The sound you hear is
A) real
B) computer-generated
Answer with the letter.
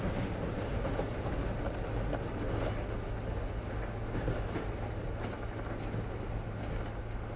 A